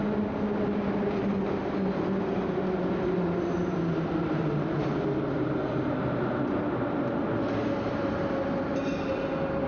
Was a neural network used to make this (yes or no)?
no